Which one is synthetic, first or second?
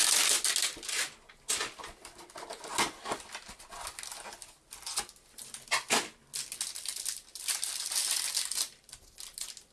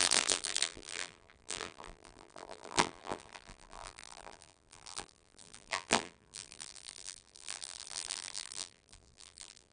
second